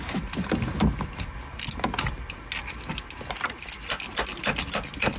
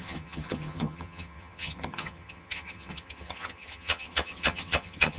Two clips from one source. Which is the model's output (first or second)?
second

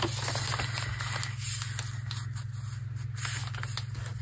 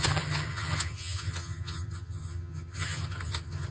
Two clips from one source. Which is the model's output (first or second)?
second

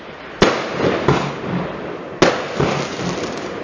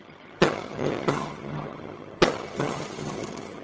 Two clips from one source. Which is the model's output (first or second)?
second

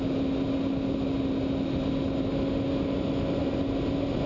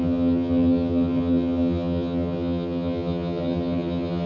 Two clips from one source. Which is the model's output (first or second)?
second